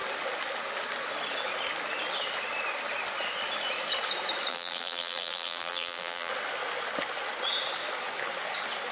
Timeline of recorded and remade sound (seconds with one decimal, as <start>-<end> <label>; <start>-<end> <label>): 0.0-4.5 recorded; 4.5-6.3 remade; 6.3-8.9 recorded